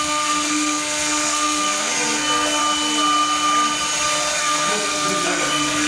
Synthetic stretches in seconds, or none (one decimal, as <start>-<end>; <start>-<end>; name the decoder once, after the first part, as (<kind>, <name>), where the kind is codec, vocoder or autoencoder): 0.0-2.6 (codec, SNAC); 4.4-5.9